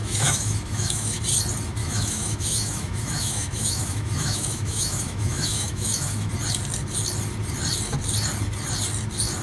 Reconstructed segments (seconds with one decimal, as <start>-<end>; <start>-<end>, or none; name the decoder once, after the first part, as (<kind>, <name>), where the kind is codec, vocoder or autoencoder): 0.0-1.2 (autoencoder, DAC-VAE); 1.8-6.3